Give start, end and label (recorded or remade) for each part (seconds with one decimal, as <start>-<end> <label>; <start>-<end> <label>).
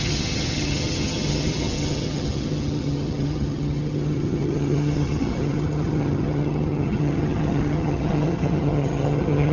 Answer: 0.0-9.5 remade